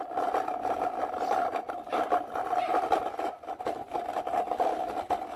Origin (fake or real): real